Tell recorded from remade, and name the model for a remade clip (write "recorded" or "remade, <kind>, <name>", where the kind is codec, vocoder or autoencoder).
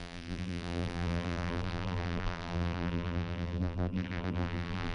remade, vocoder, BigVGAN v2